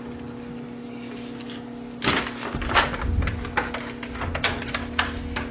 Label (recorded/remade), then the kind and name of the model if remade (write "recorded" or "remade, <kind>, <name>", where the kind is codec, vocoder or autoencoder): recorded